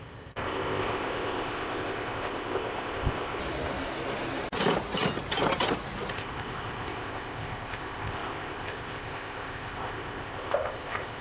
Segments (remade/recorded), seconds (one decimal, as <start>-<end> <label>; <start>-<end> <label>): 0.0-3.4 remade; 3.4-6.1 recorded; 6.1-11.2 remade